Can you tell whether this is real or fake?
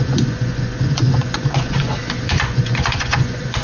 fake